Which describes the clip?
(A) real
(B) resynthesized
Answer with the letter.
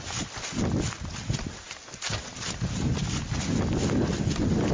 A